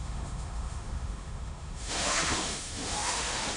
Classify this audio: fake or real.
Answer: fake